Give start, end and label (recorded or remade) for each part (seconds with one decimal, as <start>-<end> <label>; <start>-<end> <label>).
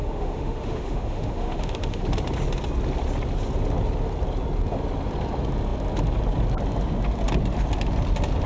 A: 0.0-2.0 remade; 2.0-8.5 recorded